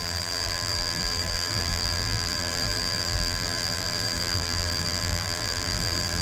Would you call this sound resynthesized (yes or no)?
yes